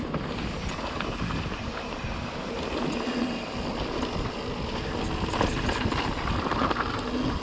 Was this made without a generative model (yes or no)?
yes